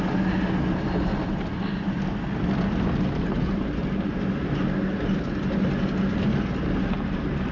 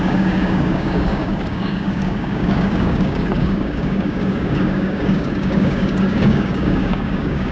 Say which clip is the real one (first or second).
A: first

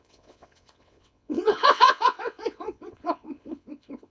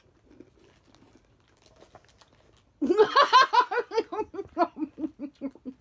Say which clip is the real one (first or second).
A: second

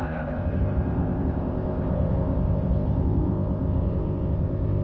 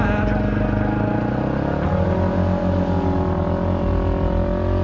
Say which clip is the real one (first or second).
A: second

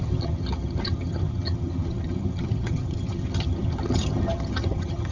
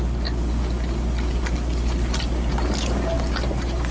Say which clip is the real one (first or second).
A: second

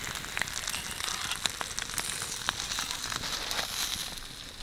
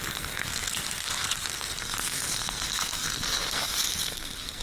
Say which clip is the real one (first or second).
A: first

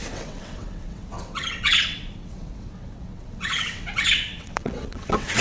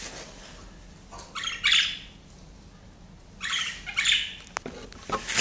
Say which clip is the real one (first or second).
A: second